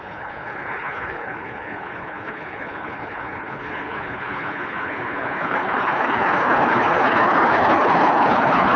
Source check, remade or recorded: remade